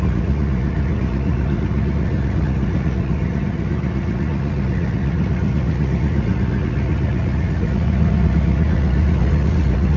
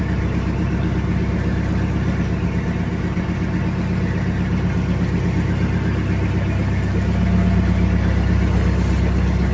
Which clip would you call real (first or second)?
second